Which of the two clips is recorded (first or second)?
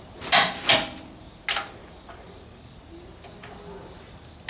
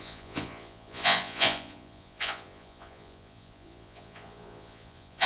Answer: first